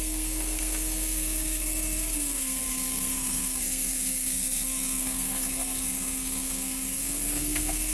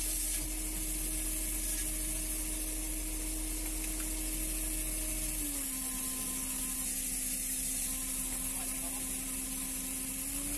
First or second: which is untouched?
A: second